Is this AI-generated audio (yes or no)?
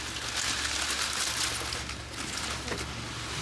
no